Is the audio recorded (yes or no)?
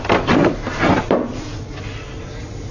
yes